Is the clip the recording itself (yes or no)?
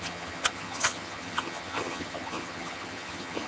no